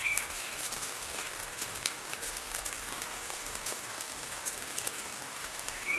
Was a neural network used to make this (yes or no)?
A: yes